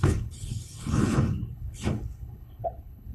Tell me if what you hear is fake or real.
fake